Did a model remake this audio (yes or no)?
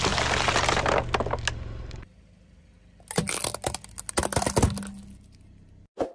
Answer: no